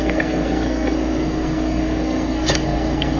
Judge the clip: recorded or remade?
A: remade